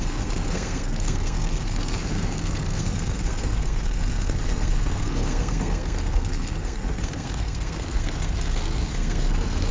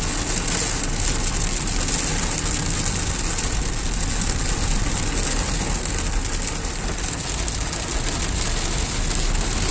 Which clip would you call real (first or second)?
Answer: second